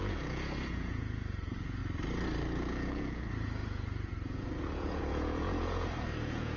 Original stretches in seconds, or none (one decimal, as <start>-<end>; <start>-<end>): 1.8-2.7